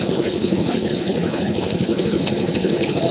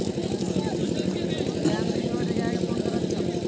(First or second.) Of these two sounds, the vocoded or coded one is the first